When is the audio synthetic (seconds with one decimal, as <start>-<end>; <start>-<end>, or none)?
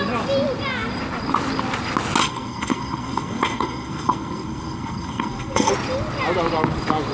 2.2-5.7